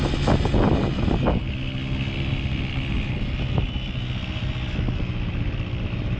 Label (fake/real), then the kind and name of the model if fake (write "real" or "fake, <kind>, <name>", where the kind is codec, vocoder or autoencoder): real